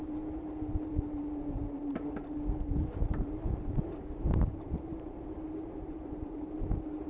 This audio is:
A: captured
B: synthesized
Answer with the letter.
B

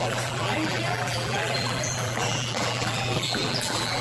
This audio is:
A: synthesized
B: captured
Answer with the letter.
A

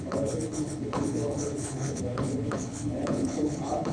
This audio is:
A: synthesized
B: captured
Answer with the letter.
A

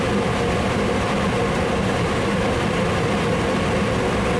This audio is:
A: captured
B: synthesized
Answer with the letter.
A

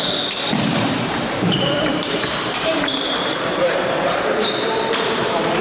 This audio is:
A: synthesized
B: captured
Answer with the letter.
A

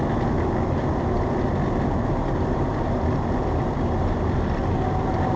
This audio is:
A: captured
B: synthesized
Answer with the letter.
A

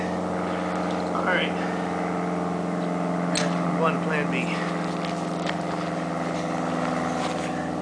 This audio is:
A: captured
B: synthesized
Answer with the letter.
A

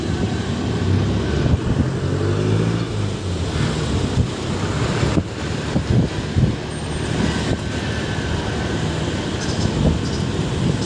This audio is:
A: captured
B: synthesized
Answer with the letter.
A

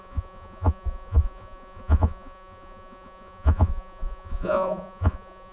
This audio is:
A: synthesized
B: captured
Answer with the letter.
A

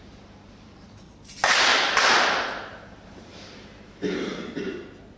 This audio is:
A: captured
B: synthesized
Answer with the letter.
B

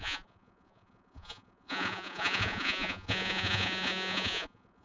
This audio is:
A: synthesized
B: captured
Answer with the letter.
A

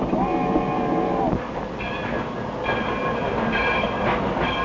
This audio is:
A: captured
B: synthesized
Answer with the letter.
A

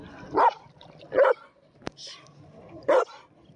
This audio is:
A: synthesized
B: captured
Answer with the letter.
B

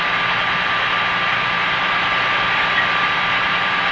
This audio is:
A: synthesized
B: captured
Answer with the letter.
B